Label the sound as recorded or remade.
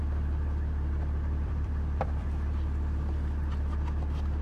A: remade